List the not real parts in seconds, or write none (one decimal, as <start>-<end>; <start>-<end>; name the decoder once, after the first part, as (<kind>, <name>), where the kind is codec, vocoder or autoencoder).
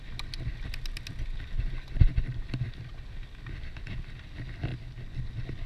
none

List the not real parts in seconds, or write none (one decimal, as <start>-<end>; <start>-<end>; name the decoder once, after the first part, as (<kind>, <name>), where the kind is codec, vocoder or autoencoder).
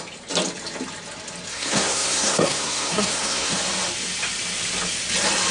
1.5-3.6 (codec, SNAC)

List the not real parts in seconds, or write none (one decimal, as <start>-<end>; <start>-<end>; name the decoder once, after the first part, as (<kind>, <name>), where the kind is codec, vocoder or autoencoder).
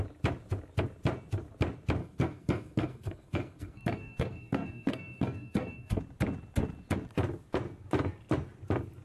2.0-6.0 (codec, SNAC)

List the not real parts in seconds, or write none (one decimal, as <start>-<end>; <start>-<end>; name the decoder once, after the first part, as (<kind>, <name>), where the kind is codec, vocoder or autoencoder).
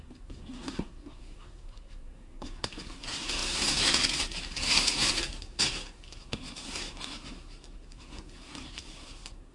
0.0-9.5 (codec, SNAC)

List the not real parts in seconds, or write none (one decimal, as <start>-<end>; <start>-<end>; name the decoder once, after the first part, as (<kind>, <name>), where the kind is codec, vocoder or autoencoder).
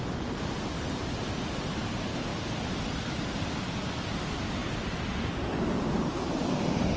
none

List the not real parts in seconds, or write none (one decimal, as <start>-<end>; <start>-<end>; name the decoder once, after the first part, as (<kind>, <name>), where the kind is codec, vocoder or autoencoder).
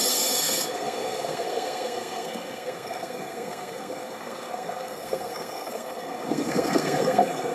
0.0-7.5 (codec, SNAC)